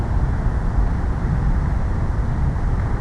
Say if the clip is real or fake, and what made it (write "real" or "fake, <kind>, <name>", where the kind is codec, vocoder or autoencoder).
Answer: real